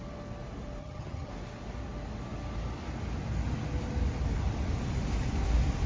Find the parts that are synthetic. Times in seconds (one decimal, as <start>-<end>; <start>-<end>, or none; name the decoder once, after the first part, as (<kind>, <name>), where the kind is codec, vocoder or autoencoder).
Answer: 0.8-1.3 (vocoder, HiFi-GAN)